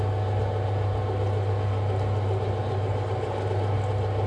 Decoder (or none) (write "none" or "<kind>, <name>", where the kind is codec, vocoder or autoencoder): none